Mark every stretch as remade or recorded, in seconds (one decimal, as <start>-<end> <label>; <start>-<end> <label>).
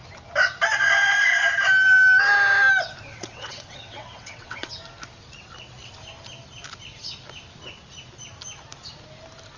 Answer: 0.0-3.1 recorded; 3.1-4.7 remade; 4.7-9.6 recorded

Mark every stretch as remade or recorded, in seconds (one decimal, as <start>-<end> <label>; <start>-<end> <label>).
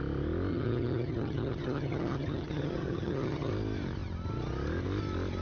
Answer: 0.0-0.5 recorded; 0.5-3.5 remade; 3.5-5.4 recorded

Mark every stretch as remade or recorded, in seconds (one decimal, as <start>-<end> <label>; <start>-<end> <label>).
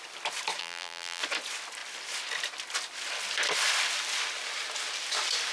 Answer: 0.0-0.6 recorded; 0.6-1.2 remade; 1.2-5.5 recorded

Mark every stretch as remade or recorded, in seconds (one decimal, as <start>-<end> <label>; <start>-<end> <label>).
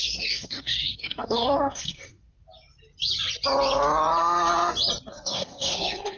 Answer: 0.0-2.4 remade; 2.4-5.1 recorded; 5.1-6.2 remade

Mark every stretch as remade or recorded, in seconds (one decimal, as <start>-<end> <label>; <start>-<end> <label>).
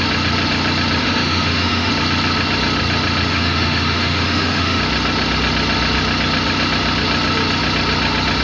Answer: 0.0-1.0 recorded; 1.0-1.9 remade; 1.9-3.3 recorded; 3.3-4.8 remade; 4.8-8.4 recorded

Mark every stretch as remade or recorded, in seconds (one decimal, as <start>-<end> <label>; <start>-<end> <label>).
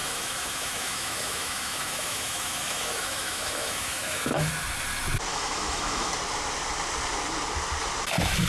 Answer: 0.0-4.5 remade; 4.5-5.3 recorded; 5.3-6.1 remade; 6.1-8.5 recorded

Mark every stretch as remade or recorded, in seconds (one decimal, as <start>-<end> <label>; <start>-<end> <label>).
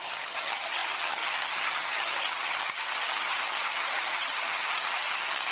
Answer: 0.0-5.5 remade